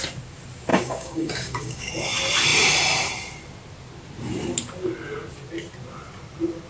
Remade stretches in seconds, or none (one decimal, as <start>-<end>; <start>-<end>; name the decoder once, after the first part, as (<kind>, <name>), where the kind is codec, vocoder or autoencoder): 0.7-1.9 (codec, DAC)